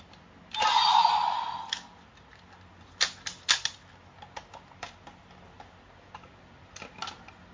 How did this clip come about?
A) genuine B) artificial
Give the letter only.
A